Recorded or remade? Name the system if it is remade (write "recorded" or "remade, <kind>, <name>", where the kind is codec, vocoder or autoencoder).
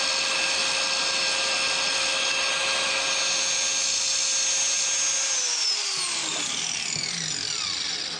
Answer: recorded